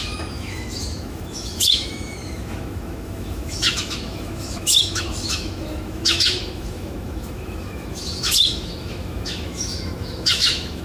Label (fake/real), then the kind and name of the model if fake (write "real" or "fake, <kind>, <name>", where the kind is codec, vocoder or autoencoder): fake, autoencoder, DAC-VAE